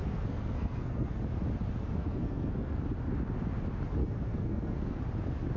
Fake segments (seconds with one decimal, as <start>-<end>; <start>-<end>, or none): 0.0-1.2; 1.8-2.8; 4.0-5.0